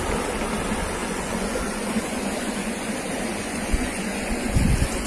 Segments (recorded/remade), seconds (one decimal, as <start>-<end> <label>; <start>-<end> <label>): 0.0-1.0 recorded; 1.0-2.9 remade; 2.9-3.4 recorded; 3.4-5.1 remade

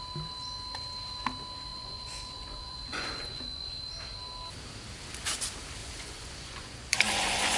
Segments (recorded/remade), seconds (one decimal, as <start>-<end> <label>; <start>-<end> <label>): 0.0-1.7 recorded; 1.7-3.7 remade; 3.7-5.8 recorded; 5.8-7.6 remade